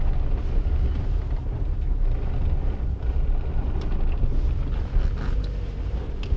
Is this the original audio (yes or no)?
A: yes